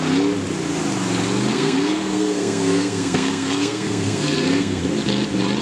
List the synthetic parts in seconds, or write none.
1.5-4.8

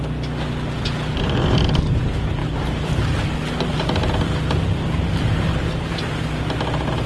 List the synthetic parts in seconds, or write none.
none

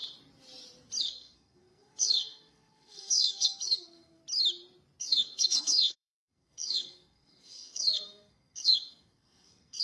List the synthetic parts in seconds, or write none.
1.0-4.2; 5.0-9.8

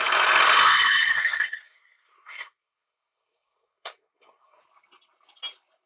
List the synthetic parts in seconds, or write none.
1.1-4.6

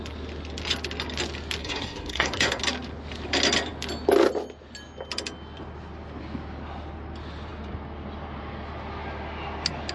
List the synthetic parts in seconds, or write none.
1.6-2.6

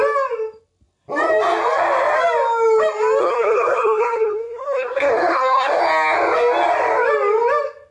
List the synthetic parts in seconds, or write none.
3.2-5.8

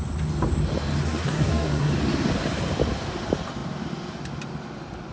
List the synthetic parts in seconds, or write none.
1.0-1.9